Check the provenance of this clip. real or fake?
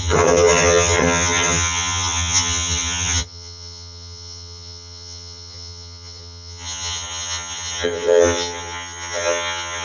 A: fake